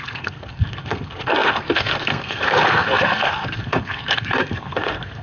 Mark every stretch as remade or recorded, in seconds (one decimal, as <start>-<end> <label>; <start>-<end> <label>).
0.0-5.2 remade